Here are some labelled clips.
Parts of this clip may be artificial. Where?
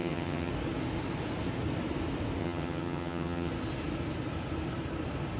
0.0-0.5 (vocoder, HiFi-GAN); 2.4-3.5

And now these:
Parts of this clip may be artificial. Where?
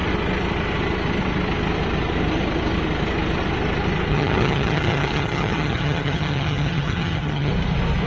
4.1-7.5 (vocoder, HiFi-GAN)